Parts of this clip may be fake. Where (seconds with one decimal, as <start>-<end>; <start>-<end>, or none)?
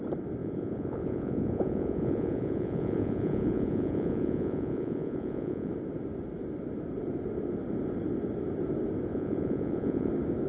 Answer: 0.4-5.7; 9.1-10.1